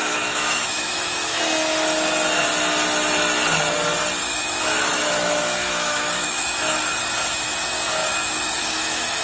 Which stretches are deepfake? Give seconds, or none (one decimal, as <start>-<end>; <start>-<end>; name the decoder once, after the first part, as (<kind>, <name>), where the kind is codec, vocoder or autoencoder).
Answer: 0.0-1.4 (autoencoder, DAC-VAE); 4.2-7.0; 8.0-9.2